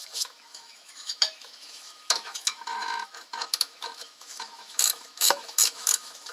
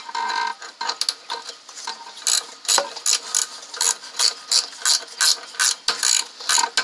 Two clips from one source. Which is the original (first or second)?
second